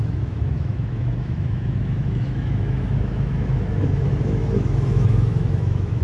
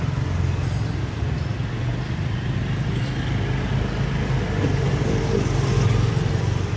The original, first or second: second